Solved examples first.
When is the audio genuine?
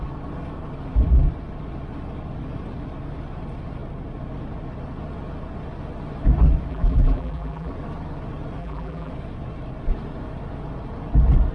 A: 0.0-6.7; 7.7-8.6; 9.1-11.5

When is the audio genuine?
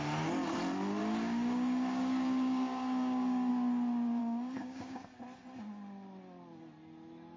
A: 0.0-1.0; 3.5-4.2; 5.0-7.4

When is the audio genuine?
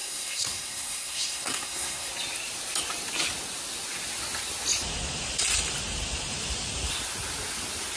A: 2.1-8.0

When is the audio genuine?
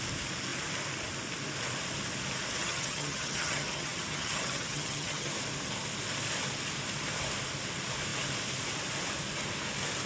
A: 0.0-2.6; 5.3-10.1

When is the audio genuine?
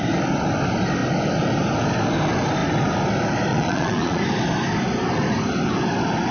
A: 0.0-3.5; 4.2-6.3